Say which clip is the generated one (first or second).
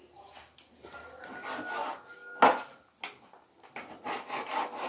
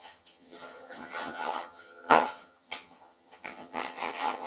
second